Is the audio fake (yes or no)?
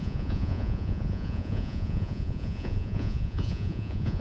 yes